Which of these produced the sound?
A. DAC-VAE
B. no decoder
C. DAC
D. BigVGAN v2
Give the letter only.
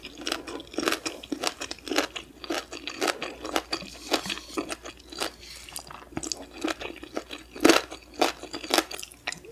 B